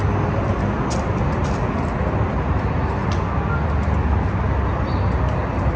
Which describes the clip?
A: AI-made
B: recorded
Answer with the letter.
B